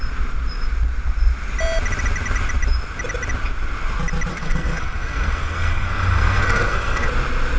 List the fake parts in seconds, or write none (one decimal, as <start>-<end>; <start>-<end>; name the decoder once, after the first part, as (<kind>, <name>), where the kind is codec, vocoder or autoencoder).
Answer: 4.3-7.1 (codec, SNAC)